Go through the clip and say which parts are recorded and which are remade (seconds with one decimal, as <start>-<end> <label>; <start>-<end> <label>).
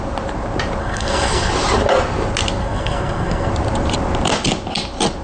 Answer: 0.0-0.8 recorded; 0.8-1.5 remade; 1.5-2.6 recorded; 2.6-3.5 remade; 3.5-5.2 recorded